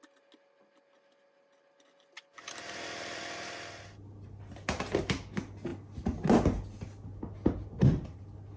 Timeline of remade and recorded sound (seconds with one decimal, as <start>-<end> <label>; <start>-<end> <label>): 0.0-8.6 recorded

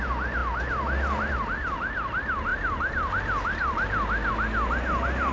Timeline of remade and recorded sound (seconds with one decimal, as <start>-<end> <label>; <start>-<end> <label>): 0.0-5.3 recorded

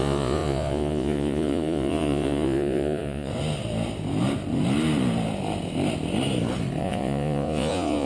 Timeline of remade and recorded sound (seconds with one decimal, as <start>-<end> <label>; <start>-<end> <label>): 0.0-3.3 remade; 3.3-6.8 recorded; 6.8-8.1 remade

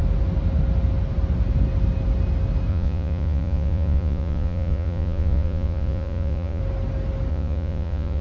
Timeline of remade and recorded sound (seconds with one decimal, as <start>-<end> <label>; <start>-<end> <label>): 0.0-2.7 recorded; 2.7-6.6 remade; 6.6-7.3 recorded; 7.3-8.2 remade

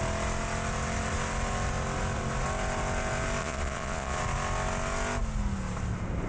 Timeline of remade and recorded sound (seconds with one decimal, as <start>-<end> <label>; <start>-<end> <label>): 0.0-3.4 recorded; 3.4-4.2 remade; 4.2-6.3 recorded